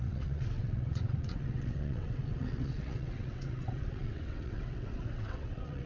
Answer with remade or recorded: remade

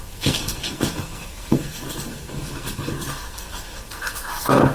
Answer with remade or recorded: remade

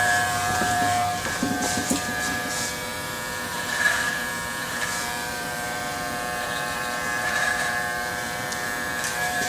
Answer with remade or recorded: remade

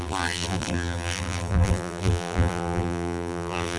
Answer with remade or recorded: remade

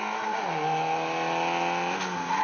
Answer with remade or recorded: recorded